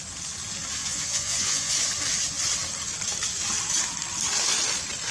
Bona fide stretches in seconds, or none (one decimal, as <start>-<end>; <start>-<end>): 0.0-0.8; 1.7-5.1